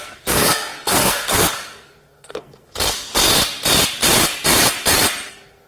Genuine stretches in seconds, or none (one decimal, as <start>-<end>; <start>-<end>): 3.1-5.3